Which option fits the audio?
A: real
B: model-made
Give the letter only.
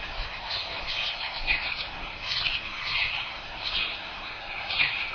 B